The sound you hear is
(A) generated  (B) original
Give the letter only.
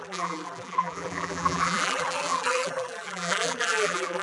A